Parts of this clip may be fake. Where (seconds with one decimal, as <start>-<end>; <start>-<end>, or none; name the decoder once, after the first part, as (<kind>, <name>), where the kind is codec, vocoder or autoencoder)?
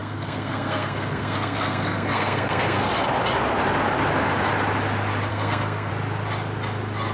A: 0.0-2.9 (codec, SNAC); 5.3-5.9